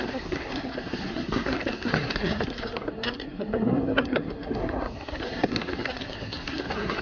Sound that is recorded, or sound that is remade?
remade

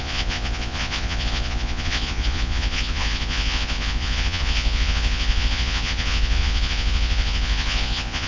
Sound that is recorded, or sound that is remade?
remade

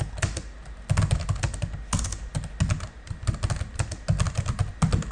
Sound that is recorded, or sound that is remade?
recorded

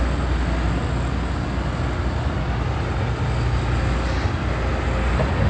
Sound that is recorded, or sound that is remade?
recorded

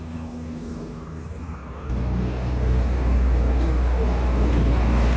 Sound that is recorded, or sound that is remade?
remade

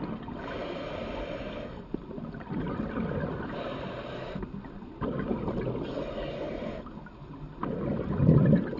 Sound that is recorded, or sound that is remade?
recorded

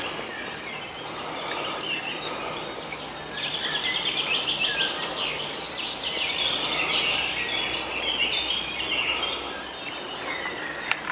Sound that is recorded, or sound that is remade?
recorded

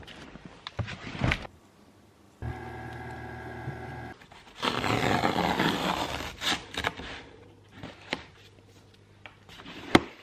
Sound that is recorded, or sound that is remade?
remade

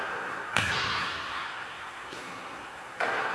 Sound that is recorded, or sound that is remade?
remade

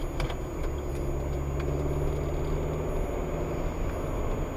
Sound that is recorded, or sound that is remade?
recorded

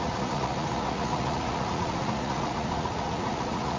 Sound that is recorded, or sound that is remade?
remade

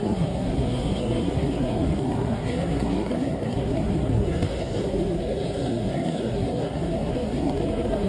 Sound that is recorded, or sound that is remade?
remade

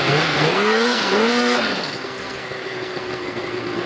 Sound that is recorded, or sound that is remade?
remade